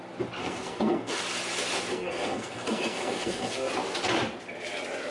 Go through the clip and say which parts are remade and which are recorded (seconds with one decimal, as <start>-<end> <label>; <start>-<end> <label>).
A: 0.0-0.4 recorded; 0.4-1.2 remade; 1.2-1.9 recorded; 1.9-3.7 remade; 3.7-5.1 recorded